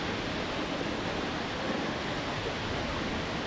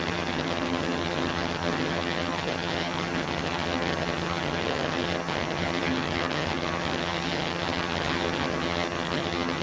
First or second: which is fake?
second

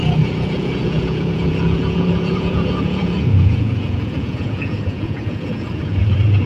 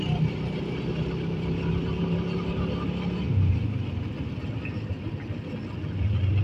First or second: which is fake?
first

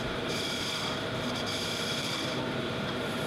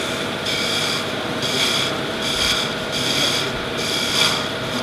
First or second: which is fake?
first